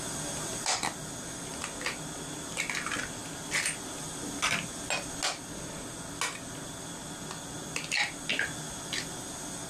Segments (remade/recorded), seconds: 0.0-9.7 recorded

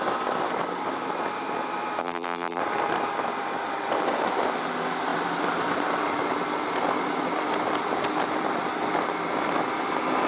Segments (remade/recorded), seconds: 0.0-2.0 recorded; 2.0-2.6 remade; 2.6-10.3 recorded

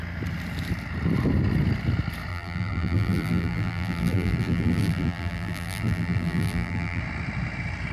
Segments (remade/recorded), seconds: 0.0-2.3 recorded; 2.3-7.0 remade; 7.0-7.9 recorded

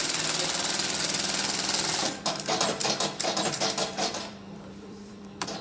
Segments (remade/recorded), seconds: 0.0-2.0 recorded; 2.0-5.6 remade

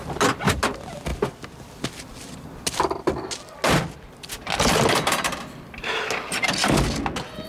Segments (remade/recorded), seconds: 0.0-7.5 recorded